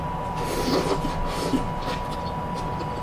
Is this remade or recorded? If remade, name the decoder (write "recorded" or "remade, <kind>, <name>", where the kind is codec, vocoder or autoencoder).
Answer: recorded